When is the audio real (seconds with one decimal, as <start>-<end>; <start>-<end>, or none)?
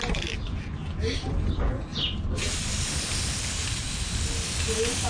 0.0-5.1